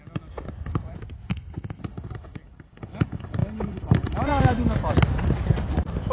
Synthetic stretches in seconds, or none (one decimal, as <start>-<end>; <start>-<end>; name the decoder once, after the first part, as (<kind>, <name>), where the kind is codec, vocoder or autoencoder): 1.3-1.8 (codec, SNAC)